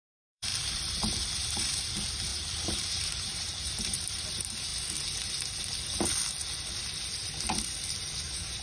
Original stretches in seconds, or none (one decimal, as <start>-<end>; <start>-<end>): 0.5-1.3; 4.7-8.0